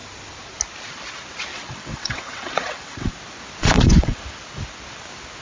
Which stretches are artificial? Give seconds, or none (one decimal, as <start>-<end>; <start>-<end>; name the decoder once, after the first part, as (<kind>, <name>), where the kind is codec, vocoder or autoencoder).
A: 1.5-3.1 (vocoder, WaveNeXt); 3.6-4.2